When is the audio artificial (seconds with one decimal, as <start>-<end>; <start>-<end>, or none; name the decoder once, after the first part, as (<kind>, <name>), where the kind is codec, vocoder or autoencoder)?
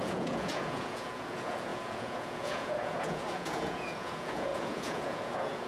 0.0-5.7 (vocoder, Vocos)